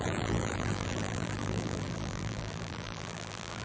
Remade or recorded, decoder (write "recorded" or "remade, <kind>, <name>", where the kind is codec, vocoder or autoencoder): remade, vocoder, BigVGAN v2